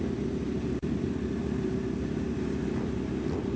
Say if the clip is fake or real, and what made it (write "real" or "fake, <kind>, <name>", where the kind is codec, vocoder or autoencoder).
real